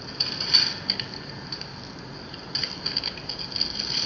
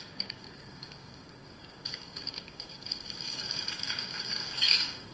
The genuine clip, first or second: first